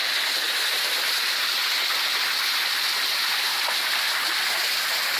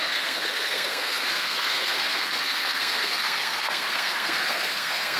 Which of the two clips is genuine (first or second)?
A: first